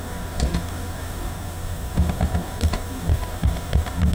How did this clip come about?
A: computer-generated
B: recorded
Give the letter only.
A